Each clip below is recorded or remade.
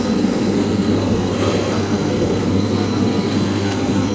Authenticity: remade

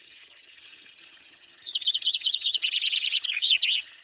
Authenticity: remade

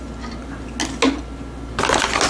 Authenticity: recorded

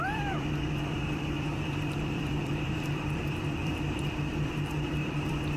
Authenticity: remade